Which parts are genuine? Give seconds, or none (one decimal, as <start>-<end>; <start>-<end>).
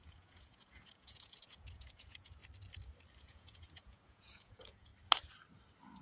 2.4-3.2; 4.9-6.0